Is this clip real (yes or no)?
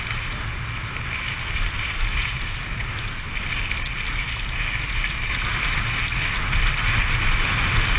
yes